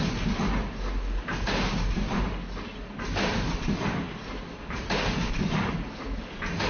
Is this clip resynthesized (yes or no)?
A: no